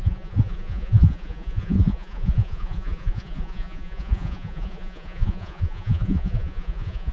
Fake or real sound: fake